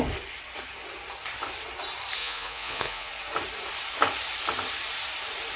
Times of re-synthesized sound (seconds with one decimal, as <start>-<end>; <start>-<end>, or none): 2.2-3.1